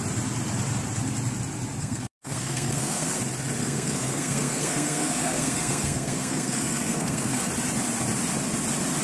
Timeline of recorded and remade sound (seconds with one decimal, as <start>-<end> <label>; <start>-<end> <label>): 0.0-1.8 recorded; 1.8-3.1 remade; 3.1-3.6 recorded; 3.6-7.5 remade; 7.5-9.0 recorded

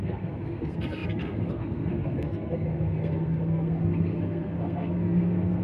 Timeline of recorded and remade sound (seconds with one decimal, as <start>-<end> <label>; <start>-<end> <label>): 0.0-5.6 remade

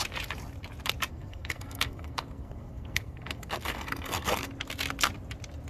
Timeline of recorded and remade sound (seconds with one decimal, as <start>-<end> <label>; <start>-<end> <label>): 0.0-1.1 recorded; 1.1-4.5 remade; 4.5-5.7 recorded

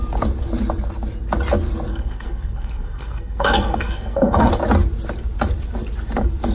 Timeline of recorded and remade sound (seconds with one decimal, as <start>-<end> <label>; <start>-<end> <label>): 0.0-1.9 recorded; 1.9-4.5 remade; 4.5-6.5 recorded